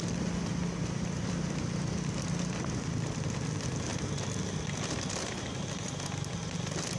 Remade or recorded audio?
recorded